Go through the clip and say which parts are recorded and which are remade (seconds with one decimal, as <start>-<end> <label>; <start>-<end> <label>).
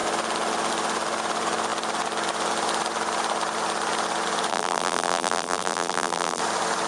0.0-4.5 recorded; 4.5-6.4 remade; 6.4-6.9 recorded